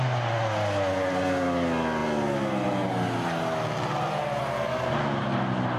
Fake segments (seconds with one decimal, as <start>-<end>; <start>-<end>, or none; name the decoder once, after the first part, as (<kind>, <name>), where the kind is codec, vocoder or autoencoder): none